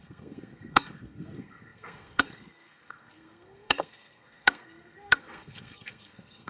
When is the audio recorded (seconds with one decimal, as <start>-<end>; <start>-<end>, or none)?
none